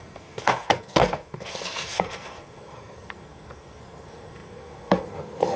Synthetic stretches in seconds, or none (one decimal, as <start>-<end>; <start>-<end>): 0.0-5.6